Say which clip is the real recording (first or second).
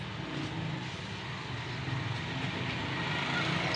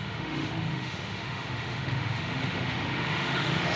first